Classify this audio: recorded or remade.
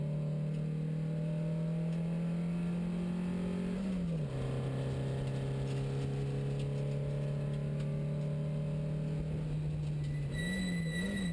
recorded